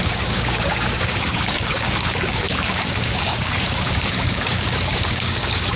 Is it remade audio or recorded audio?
remade